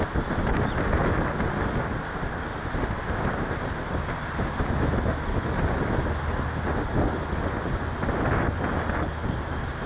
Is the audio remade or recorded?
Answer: recorded